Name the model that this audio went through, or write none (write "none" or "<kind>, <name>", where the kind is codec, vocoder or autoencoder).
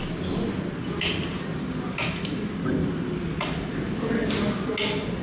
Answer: none